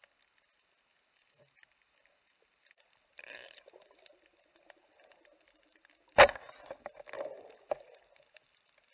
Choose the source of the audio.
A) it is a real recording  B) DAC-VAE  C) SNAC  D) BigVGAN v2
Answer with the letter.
A